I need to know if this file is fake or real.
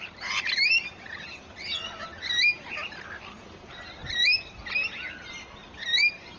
real